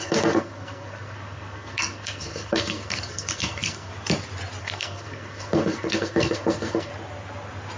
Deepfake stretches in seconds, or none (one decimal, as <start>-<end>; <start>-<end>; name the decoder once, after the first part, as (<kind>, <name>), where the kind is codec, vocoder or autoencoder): 0.0-3.9 (codec, SNAC); 4.6-6.9

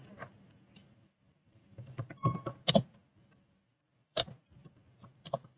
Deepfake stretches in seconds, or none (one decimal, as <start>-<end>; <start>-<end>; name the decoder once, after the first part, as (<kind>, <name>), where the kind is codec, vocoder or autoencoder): 0.8-2.1 (vocoder, BigVGAN v2); 3.7-4.7

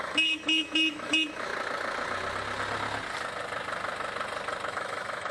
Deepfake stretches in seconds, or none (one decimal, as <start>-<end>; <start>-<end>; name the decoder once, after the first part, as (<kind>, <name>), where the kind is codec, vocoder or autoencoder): 0.0-1.5 (autoencoder, DAC-VAE); 4.7-5.3